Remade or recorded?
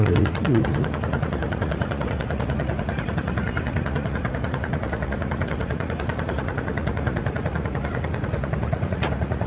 remade